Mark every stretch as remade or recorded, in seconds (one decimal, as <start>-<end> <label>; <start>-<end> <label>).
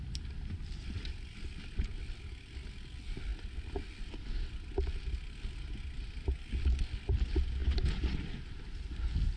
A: 0.0-9.4 recorded